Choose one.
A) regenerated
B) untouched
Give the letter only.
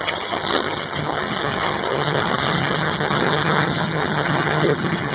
A